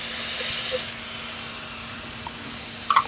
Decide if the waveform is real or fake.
real